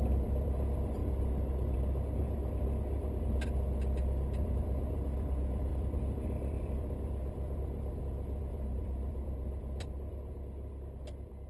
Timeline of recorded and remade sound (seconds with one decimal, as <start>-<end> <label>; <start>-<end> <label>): 0.0-1.0 remade; 1.0-3.2 recorded; 3.2-11.5 remade